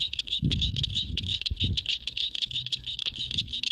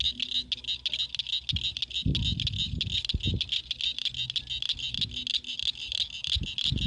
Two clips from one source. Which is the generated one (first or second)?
first